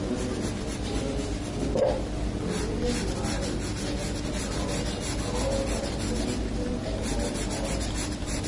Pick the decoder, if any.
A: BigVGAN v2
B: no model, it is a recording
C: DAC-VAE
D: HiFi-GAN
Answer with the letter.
B